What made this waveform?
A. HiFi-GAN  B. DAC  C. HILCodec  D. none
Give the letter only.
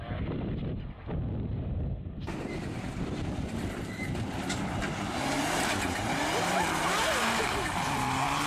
D